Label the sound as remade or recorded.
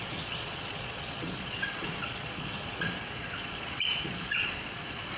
remade